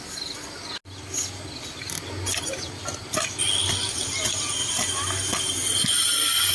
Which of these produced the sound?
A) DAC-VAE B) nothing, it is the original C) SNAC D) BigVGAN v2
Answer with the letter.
B